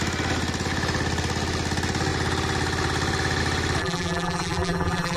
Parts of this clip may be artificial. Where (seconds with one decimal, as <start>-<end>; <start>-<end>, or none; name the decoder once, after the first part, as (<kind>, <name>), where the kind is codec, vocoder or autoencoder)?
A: 3.8-5.2 (vocoder, BigVGAN v2)